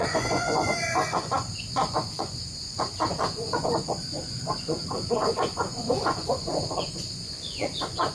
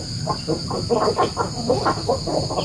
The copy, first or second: first